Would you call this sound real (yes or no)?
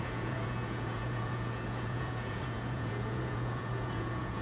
no